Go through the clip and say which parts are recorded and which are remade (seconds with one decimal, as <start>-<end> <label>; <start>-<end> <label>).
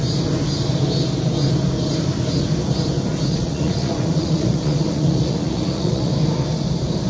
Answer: 0.0-3.3 recorded; 3.3-6.1 remade; 6.1-7.1 recorded